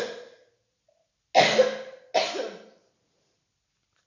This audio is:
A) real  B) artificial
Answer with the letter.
A